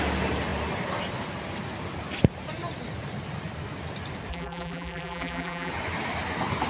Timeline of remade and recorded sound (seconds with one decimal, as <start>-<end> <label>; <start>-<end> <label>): 0.0-4.3 recorded; 4.3-5.7 remade; 5.7-6.7 recorded